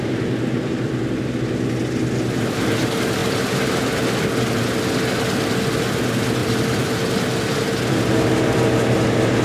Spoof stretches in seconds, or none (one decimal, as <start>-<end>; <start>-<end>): 3.2-4.3; 6.4-8.0